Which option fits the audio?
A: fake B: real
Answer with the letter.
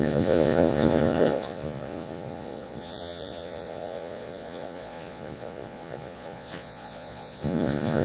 A